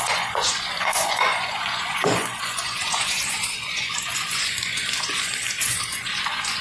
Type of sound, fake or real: fake